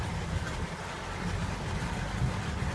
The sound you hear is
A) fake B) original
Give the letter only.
B